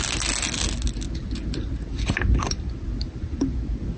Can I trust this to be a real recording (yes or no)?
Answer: yes